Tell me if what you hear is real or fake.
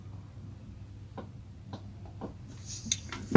real